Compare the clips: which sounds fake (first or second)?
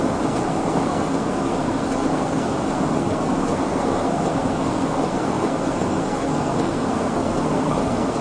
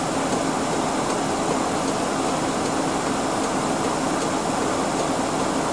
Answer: first